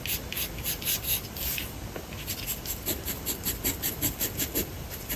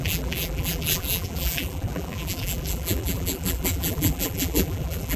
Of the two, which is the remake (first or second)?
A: second